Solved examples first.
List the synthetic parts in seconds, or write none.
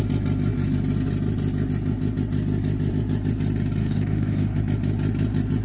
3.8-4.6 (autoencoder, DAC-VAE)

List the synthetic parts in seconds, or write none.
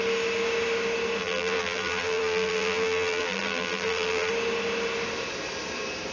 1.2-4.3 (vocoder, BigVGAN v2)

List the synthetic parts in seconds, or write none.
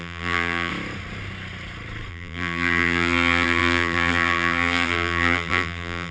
0.0-0.7 (vocoder, BigVGAN v2); 2.1-6.1